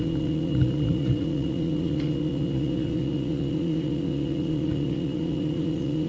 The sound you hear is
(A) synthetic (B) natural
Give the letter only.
A